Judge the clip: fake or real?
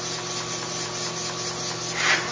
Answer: real